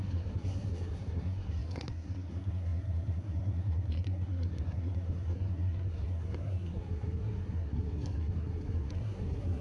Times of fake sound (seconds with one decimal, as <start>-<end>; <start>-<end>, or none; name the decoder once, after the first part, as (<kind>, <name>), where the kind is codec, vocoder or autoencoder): 0.0-9.6 (codec, SNAC)